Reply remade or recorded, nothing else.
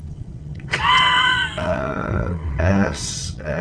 remade